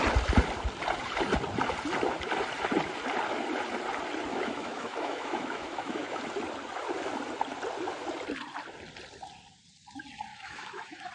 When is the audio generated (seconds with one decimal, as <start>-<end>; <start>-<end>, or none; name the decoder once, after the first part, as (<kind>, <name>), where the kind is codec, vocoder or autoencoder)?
4.3-6.2 (autoencoder, DAC-VAE); 10.3-11.1